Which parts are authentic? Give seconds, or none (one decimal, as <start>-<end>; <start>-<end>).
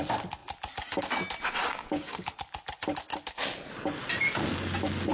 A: 0.0-1.6; 2.3-5.1